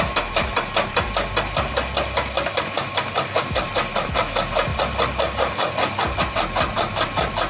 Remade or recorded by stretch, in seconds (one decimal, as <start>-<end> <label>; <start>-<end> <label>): 0.0-7.5 recorded

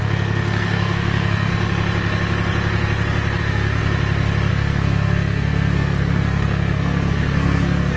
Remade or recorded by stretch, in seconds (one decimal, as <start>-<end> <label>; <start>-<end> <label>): 0.0-1.5 remade; 1.5-3.4 recorded; 3.4-3.8 remade; 3.8-4.5 recorded; 4.5-8.0 remade

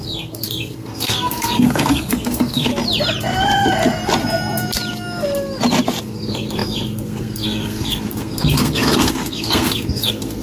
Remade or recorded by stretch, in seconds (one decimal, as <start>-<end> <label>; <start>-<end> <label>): 0.0-2.7 remade; 2.7-6.0 recorded; 6.0-10.4 remade

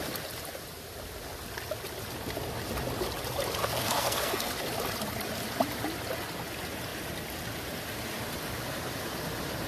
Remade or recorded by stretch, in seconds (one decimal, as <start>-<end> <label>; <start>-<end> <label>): 0.0-3.6 recorded; 3.6-4.5 remade; 4.5-9.7 recorded

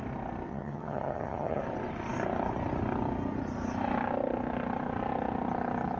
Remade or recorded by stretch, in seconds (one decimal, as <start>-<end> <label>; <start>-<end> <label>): 0.0-0.5 recorded; 0.5-1.6 remade; 1.6-6.0 recorded

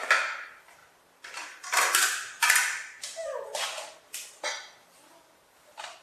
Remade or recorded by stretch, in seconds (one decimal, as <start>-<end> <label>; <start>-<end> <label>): 0.0-6.0 recorded

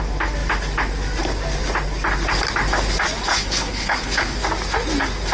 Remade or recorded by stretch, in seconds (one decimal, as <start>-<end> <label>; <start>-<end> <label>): 0.0-3.3 recorded; 3.3-4.4 remade; 4.4-5.3 recorded